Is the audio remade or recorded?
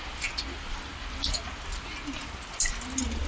recorded